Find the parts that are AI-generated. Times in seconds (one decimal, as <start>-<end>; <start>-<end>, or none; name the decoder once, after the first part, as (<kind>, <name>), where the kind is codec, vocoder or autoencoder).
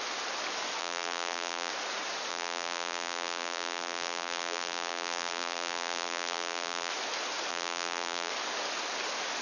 0.8-1.7 (vocoder, BigVGAN v2); 2.3-6.9; 7.5-8.3